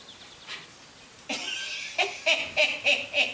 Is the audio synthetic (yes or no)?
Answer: no